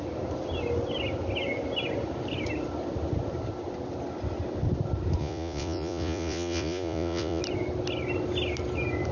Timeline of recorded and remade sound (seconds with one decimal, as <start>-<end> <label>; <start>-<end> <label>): 0.0-5.2 recorded; 5.2-7.4 remade; 7.4-9.1 recorded